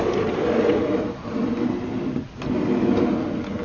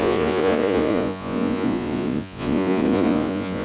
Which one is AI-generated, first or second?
second